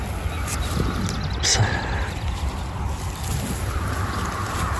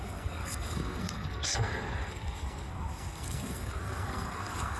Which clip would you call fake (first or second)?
second